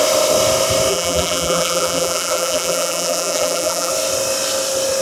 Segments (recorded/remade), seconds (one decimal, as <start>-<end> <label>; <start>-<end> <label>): 0.0-0.9 recorded; 0.9-3.9 remade; 3.9-5.0 recorded